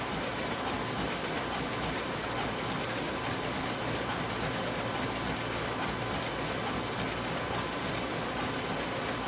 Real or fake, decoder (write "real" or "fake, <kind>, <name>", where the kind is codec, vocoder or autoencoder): real